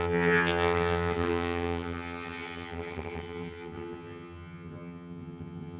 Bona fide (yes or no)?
no